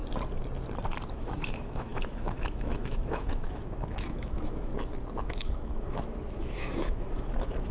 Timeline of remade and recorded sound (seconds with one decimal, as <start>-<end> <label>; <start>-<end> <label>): 0.0-1.1 recorded; 1.1-4.7 remade; 4.7-5.2 recorded; 5.2-7.7 remade